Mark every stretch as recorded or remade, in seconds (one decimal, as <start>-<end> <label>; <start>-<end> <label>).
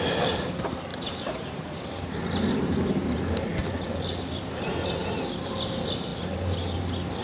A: 0.0-0.9 recorded; 0.9-2.1 remade; 2.1-7.2 recorded